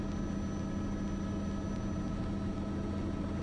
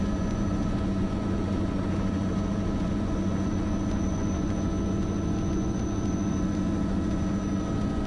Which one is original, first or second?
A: first